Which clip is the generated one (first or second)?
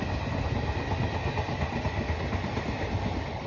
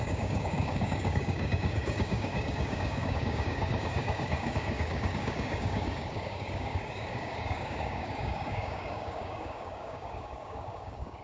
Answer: second